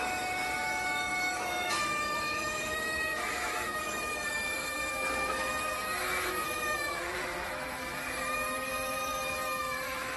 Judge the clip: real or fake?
fake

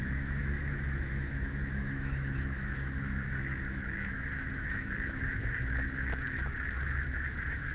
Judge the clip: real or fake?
fake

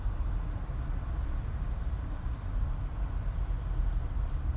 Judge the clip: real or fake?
real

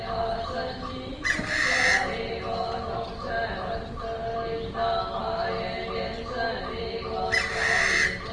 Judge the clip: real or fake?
real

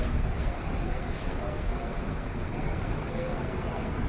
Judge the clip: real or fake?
fake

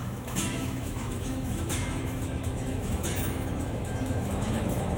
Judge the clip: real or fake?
fake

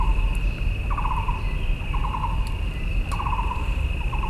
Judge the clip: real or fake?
real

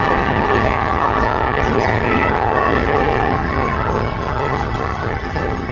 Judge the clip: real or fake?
fake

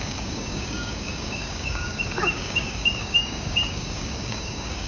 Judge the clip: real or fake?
fake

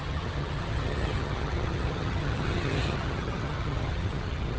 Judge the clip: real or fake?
fake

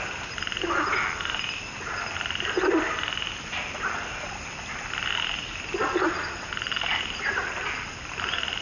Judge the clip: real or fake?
real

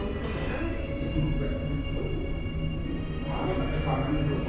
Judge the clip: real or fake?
real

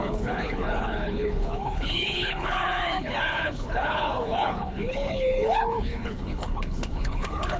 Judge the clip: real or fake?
fake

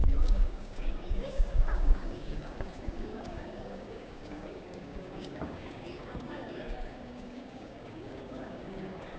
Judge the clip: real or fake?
fake